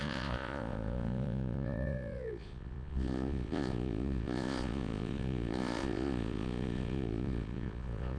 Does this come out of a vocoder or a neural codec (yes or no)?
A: yes